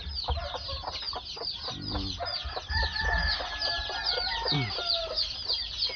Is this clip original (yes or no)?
yes